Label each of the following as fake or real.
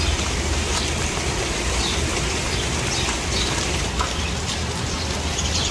real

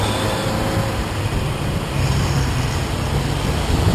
real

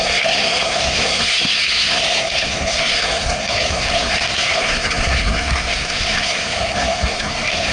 fake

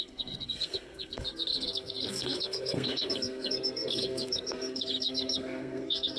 fake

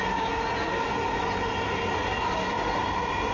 real